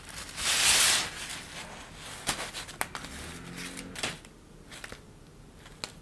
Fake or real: real